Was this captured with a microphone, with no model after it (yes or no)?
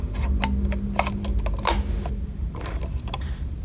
yes